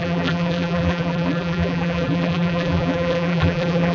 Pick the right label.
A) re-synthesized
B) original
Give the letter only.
A